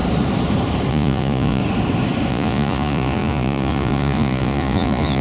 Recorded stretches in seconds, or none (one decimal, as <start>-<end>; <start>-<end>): 0.0-0.9; 1.6-2.3